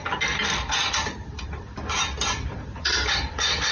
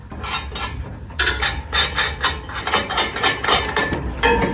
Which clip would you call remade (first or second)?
first